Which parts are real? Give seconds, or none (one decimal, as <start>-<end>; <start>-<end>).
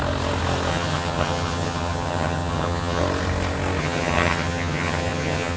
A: 0.0-0.7; 3.0-3.8